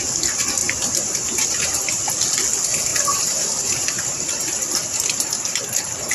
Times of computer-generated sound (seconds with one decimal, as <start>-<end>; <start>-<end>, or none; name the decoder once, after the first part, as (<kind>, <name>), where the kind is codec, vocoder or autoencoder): 0.6-2.1 (vocoder, BigVGAN v2); 2.9-5.6